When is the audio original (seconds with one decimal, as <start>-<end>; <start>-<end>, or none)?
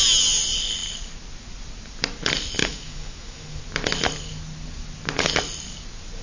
0.0-2.6; 3.6-6.2